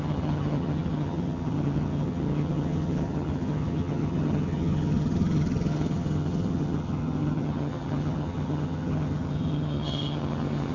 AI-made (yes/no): yes